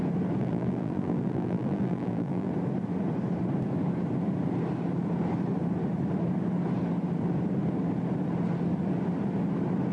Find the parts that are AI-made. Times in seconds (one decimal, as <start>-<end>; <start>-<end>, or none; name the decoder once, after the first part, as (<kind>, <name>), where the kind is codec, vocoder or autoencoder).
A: 0.4-2.5 (vocoder, BigVGAN v2)